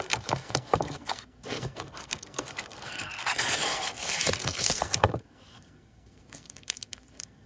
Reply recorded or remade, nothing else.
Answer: remade